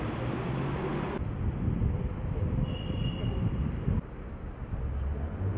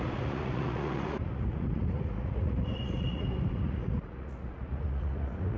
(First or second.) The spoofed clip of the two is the second